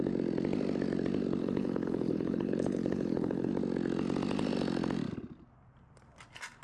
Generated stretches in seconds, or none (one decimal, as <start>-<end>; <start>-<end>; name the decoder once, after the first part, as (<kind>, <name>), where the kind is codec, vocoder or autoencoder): 1.4-3.5 (codec, HILCodec)